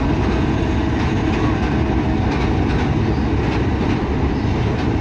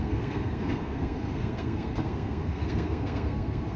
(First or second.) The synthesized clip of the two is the second